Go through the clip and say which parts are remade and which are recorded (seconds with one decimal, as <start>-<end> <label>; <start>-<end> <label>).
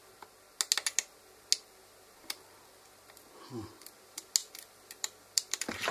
0.0-4.4 recorded; 4.4-5.9 remade